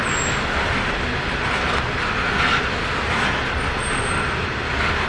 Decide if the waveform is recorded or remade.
recorded